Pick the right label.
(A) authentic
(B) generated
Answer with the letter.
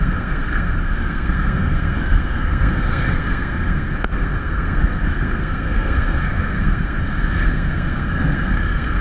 B